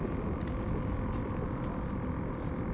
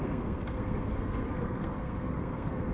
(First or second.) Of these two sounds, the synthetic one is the second